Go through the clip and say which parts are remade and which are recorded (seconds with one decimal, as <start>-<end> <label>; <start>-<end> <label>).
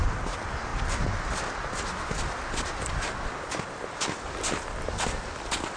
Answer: 0.0-5.8 recorded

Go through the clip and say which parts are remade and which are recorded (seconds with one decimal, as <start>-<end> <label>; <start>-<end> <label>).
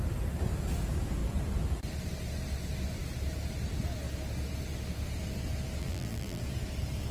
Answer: 0.0-5.8 recorded; 5.8-6.4 remade; 6.4-7.1 recorded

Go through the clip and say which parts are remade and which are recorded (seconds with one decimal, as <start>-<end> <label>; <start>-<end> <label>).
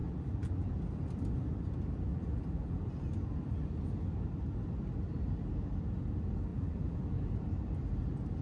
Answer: 0.0-0.7 remade; 0.7-2.1 recorded; 2.1-3.0 remade; 3.0-6.5 recorded; 6.5-7.3 remade; 7.3-8.4 recorded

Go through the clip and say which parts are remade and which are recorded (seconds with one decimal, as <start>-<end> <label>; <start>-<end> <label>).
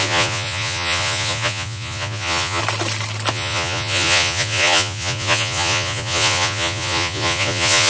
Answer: 0.0-2.6 remade; 2.6-3.3 recorded; 3.3-7.9 remade